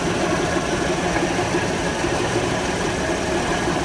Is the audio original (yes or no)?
yes